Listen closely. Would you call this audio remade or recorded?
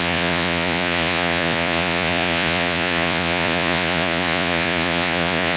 remade